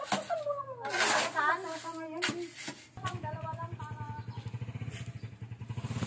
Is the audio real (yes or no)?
yes